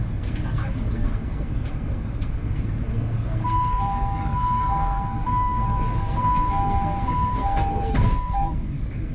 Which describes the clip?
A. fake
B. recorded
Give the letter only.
A